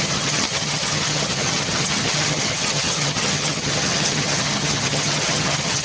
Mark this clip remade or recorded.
remade